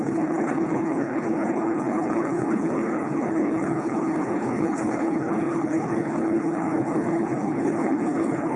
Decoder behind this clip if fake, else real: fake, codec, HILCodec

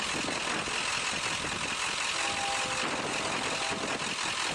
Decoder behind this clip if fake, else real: real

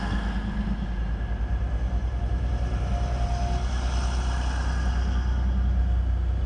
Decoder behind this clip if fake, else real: real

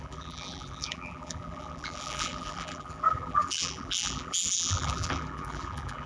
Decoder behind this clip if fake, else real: fake, vocoder, BigVGAN v2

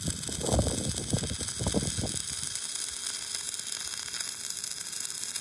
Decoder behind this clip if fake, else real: real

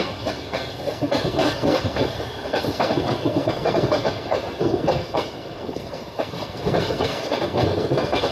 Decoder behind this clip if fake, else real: fake, codec, SNAC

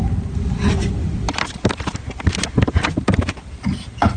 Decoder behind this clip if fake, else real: real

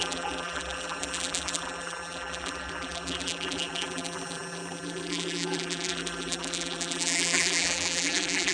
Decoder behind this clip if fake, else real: fake, vocoder, BigVGAN v2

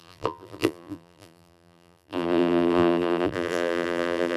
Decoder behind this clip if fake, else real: fake, vocoder, BigVGAN v2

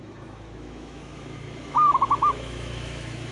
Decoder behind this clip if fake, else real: fake, autoencoder, DAC-VAE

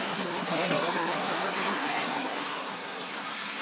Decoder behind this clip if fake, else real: fake, codec, SNAC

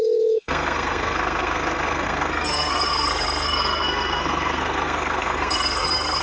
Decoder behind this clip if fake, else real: fake, codec, SNAC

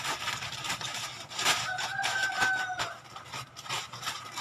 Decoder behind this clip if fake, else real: real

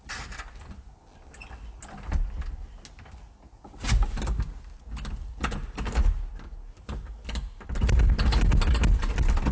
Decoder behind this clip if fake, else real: real